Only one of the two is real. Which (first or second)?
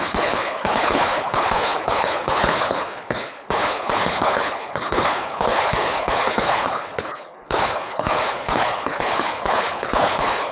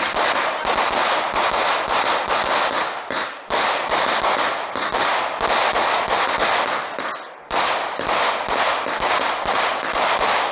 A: second